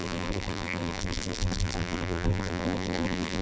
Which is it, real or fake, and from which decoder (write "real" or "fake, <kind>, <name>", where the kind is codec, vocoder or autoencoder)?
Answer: fake, vocoder, BigVGAN v2